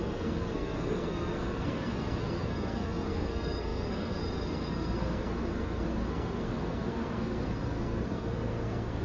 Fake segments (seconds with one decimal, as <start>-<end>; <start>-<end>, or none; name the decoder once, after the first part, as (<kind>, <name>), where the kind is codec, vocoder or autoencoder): 0.0-9.0 (codec, SNAC)